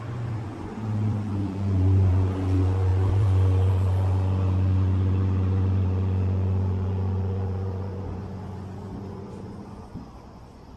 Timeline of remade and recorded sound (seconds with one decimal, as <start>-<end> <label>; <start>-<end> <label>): 0.0-10.8 remade